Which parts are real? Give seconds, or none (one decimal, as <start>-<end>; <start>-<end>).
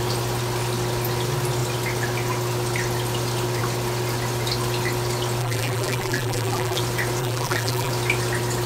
0.0-5.4; 6.8-7.2; 7.9-8.7